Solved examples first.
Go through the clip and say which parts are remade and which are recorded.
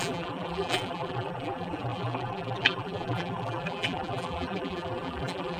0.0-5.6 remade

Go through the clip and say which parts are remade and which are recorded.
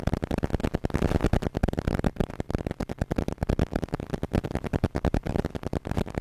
0.0-1.6 recorded; 1.6-5.3 remade; 5.3-6.2 recorded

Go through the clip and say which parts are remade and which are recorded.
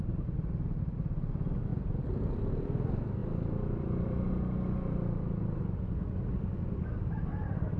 0.0-1.7 recorded; 1.7-2.3 remade; 2.3-7.8 recorded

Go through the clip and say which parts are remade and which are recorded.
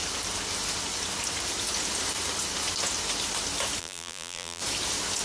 0.0-3.8 recorded; 3.8-4.6 remade; 4.6-5.2 recorded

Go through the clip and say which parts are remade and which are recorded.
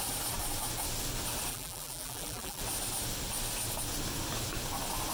0.0-1.5 recorded; 1.5-2.6 remade; 2.6-5.1 recorded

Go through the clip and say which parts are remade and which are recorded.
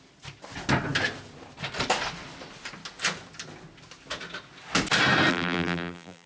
0.0-5.3 recorded; 5.3-6.3 remade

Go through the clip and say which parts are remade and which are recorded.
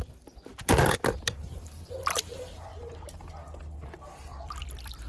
0.0-2.7 remade; 2.7-4.1 recorded; 4.1-5.1 remade